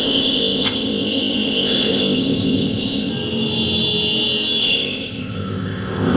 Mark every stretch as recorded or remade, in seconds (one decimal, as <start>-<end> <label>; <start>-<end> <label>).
0.0-3.1 remade; 3.1-4.6 recorded; 4.6-6.2 remade